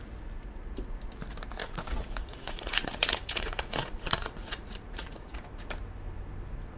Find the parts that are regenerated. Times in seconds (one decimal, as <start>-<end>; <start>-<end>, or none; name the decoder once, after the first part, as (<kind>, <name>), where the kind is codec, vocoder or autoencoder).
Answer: 1.6-5.7 (vocoder, Vocos)